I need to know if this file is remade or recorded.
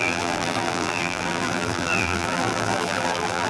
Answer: remade